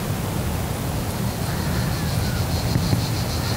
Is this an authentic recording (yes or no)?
yes